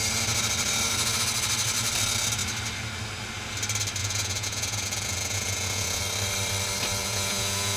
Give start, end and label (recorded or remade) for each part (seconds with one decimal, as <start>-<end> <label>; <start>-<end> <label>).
0.0-4.0 recorded; 4.0-6.0 remade; 6.0-7.0 recorded; 7.0-7.8 remade